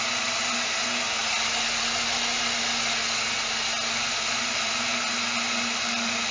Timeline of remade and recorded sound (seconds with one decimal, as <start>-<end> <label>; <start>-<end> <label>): 0.0-6.3 recorded